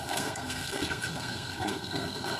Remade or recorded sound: remade